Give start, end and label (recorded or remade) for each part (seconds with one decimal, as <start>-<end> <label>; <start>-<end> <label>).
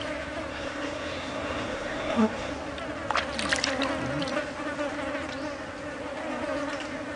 0.0-0.5 recorded; 0.5-2.5 remade; 2.5-7.2 recorded